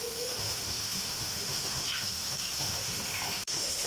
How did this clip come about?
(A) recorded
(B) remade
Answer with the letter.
B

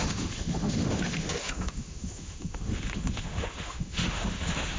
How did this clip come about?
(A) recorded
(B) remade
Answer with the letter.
B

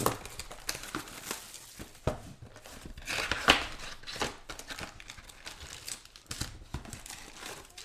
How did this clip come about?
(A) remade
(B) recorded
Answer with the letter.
B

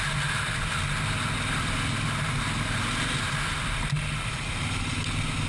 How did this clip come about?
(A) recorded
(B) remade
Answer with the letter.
A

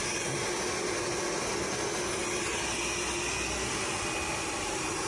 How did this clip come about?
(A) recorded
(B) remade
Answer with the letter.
A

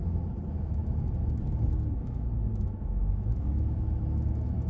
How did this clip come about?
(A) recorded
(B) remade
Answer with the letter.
B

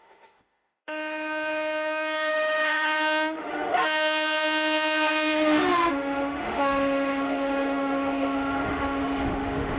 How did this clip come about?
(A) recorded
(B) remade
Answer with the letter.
B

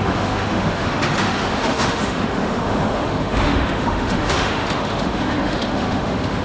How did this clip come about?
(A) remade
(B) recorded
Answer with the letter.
A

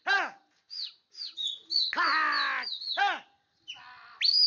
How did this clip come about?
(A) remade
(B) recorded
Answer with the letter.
B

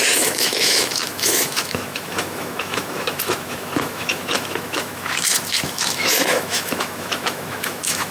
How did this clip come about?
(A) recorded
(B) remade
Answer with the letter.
B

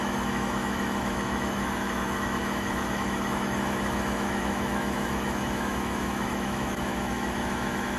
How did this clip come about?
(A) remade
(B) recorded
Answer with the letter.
A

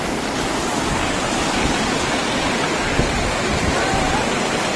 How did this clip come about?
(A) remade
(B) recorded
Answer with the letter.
B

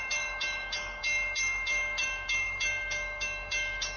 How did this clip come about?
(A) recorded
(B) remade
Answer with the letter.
B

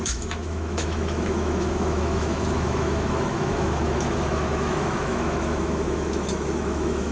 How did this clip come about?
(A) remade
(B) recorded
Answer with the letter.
A